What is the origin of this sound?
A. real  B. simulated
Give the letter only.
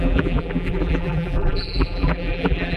B